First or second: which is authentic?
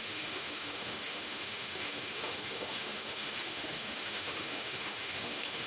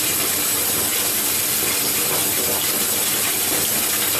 second